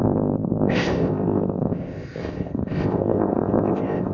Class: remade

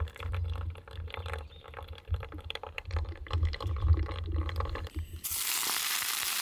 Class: remade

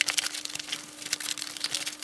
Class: recorded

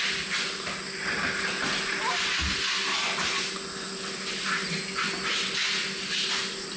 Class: recorded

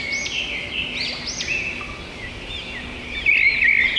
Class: recorded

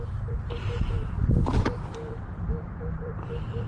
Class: remade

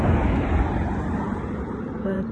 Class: remade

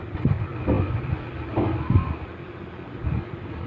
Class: recorded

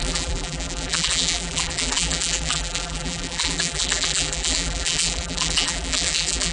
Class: remade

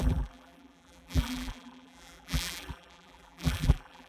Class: remade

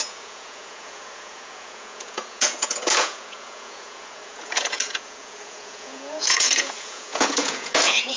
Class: remade